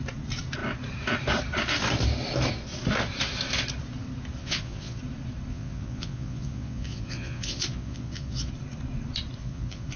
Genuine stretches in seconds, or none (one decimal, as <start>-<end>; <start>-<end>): 0.0-4.4; 5.0-5.5; 8.5-9.4